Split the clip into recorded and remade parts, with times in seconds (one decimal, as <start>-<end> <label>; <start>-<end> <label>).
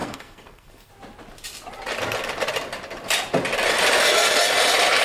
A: 0.0-0.9 remade; 0.9-5.0 recorded